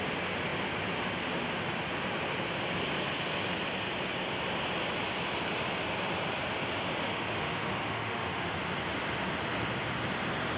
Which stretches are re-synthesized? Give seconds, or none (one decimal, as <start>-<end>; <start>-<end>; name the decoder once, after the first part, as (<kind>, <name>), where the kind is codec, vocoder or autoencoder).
7.0-8.5 (autoencoder, DAC-VAE)